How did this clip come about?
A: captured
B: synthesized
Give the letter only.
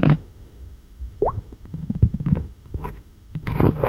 B